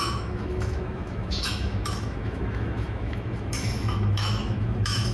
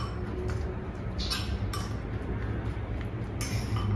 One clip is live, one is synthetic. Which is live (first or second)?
second